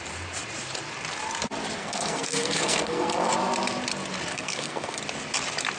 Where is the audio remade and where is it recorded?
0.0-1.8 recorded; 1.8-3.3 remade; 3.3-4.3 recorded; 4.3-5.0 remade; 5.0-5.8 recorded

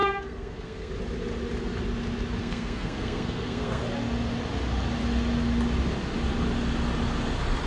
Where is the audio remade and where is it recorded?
0.0-0.9 remade; 0.9-2.4 recorded; 2.4-3.8 remade; 3.8-7.7 recorded

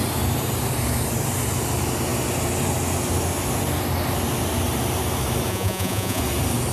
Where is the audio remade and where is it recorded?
0.0-5.5 recorded; 5.5-6.2 remade; 6.2-6.7 recorded

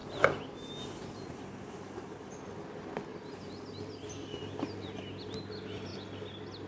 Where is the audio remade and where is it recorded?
0.0-6.7 recorded